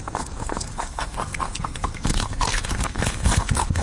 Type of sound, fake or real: fake